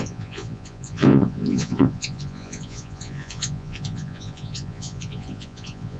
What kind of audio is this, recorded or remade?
remade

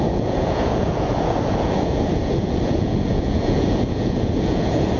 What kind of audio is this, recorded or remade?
remade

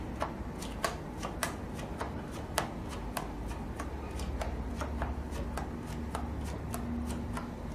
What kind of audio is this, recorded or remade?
recorded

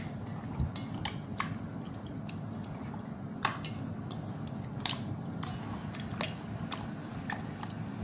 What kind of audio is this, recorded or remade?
recorded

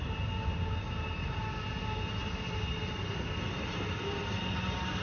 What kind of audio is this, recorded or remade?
recorded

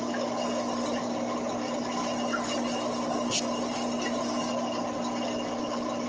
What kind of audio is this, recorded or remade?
recorded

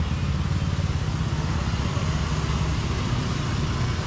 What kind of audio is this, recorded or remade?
recorded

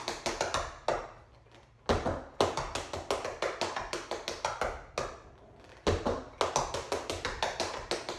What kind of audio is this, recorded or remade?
recorded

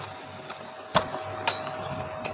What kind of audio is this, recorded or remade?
recorded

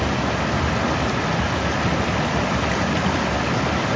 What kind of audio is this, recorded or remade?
recorded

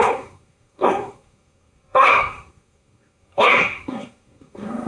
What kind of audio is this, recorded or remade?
remade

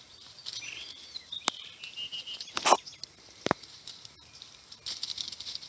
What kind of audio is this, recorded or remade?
recorded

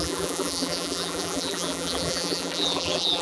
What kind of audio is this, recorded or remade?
remade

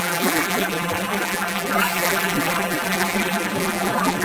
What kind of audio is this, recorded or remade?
remade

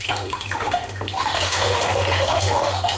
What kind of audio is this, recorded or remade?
remade